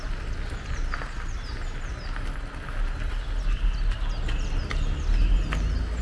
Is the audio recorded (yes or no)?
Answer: yes